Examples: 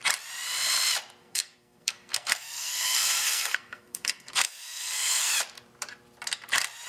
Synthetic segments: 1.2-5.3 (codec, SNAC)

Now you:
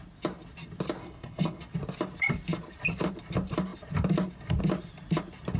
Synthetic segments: 1.0-1.6 (codec, HILCodec)

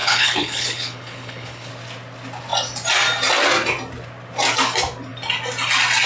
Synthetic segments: 0.0-1.7 (codec, HILCodec)

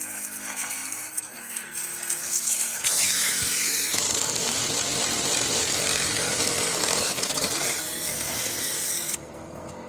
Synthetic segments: 0.0-4.6 (codec, SNAC); 5.6-9.9

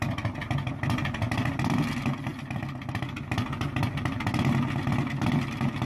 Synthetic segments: none

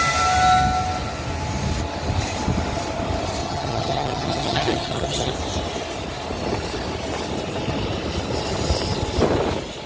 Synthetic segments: 3.4-5.3 (vocoder, HiFi-GAN)

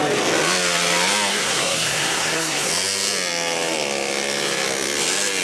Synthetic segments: 1.3-2.7 (codec, SNAC)

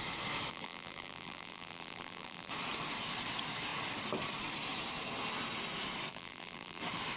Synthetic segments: 0.5-2.5 (vocoder, BigVGAN v2); 6.1-6.8